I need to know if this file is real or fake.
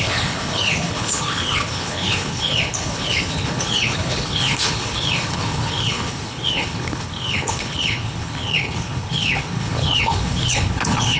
fake